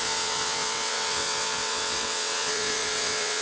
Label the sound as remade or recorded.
remade